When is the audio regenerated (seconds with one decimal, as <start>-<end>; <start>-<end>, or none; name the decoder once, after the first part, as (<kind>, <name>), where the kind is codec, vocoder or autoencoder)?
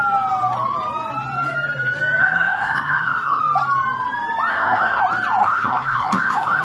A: 2.2-3.4 (codec, SNAC); 4.5-5.0; 5.4-6.6